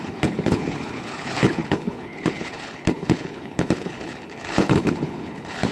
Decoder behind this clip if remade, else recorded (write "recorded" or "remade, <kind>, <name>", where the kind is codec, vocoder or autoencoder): remade, codec, HILCodec